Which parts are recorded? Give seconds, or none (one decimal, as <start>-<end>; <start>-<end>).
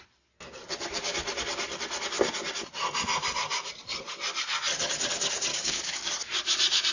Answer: 0.0-5.5; 6.1-6.9